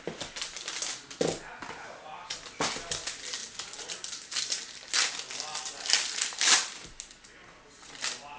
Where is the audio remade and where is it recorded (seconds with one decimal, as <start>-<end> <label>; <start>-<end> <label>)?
0.0-3.4 recorded; 3.4-4.9 remade; 4.9-5.5 recorded; 5.5-6.5 remade; 6.5-8.4 recorded